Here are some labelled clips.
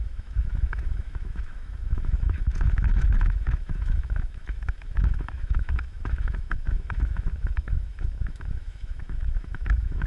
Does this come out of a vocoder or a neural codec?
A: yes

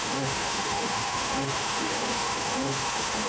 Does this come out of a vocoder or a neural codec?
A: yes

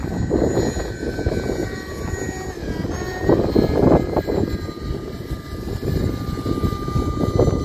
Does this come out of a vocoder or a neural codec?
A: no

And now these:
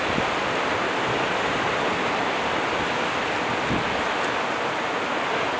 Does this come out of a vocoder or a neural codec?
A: no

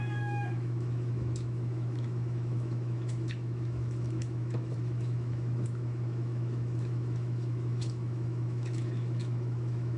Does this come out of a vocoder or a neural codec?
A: yes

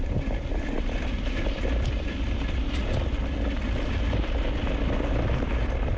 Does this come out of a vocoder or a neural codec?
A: no